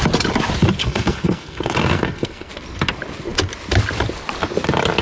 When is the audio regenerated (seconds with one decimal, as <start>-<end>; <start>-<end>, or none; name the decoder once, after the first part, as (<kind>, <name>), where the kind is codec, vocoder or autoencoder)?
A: 0.8-2.5 (codec, SNAC)

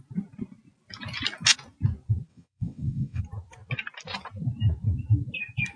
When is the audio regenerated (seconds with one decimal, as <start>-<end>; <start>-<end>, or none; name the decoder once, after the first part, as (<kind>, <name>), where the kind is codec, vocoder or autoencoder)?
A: 2.3-3.2 (vocoder, WaveNeXt)

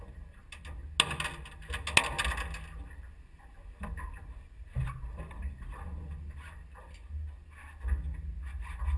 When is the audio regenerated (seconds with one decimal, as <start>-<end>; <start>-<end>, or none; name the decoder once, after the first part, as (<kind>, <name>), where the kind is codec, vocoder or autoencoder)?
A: none

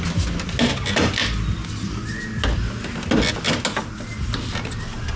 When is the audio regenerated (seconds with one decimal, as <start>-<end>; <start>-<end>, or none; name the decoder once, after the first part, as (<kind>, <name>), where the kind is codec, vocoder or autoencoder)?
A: none

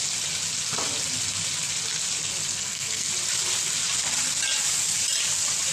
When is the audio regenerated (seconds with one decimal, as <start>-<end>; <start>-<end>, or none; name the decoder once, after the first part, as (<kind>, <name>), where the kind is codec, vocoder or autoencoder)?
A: 2.5-3.1 (codec, SNAC)

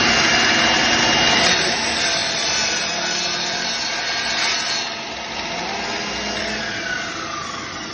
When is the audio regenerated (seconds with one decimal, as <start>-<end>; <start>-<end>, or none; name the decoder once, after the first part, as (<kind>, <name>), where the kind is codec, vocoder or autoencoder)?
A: none

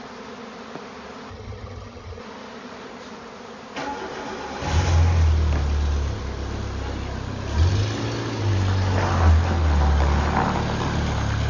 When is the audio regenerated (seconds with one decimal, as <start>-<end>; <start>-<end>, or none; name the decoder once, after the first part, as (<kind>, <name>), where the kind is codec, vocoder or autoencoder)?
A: 1.3-2.2 (vocoder, HiFi-GAN)